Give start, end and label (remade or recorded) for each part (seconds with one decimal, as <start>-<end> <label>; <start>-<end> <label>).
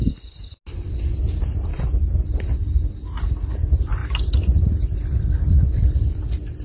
0.0-6.6 recorded